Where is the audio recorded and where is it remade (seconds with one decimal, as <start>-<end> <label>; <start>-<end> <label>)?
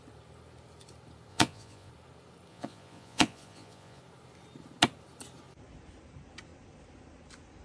0.0-1.3 recorded; 1.3-1.9 remade; 1.9-2.5 recorded; 2.5-4.0 remade; 4.0-7.6 recorded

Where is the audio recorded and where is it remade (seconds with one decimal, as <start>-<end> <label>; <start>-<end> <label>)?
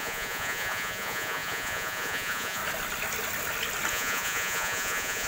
0.0-2.6 remade; 2.6-3.9 recorded; 3.9-5.3 remade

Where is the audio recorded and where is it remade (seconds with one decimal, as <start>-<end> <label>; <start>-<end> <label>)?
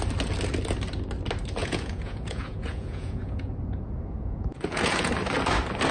0.0-1.6 recorded; 1.6-5.1 remade; 5.1-5.9 recorded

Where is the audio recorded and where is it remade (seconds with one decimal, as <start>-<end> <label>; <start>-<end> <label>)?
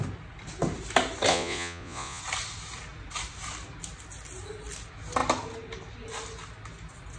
0.0-1.3 recorded; 1.3-2.2 remade; 2.2-7.2 recorded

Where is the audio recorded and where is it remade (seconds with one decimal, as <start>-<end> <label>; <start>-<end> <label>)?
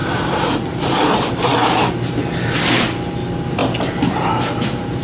0.0-1.1 remade; 1.1-5.0 recorded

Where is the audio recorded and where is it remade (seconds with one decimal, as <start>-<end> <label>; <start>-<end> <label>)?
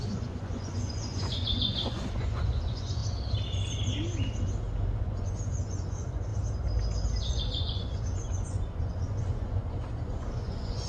0.0-3.0 remade; 3.0-5.0 recorded; 5.0-6.3 remade; 6.3-7.2 recorded; 7.2-10.9 remade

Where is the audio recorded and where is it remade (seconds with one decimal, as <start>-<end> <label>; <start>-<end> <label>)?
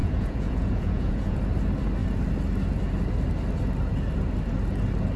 0.0-1.4 remade; 1.4-5.2 recorded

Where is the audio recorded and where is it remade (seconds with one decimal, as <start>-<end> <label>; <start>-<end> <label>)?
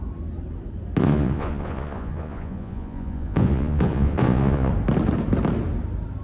0.0-1.0 recorded; 1.0-4.7 remade; 4.7-6.2 recorded